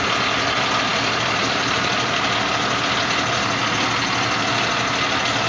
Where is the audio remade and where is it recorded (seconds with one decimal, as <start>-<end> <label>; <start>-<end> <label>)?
0.0-5.5 recorded